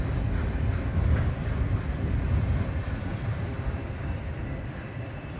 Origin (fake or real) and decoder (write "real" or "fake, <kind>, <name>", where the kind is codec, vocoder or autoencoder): real